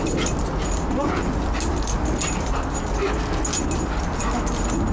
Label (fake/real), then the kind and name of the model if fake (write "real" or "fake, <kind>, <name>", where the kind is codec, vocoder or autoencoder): real